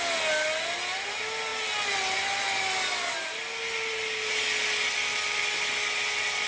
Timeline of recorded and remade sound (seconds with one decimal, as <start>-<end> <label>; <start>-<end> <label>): 0.0-6.5 recorded